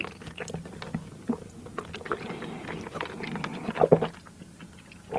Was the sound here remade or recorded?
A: recorded